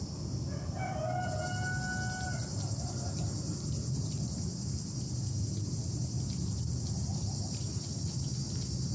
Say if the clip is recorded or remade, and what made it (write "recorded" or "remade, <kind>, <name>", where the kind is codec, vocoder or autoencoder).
recorded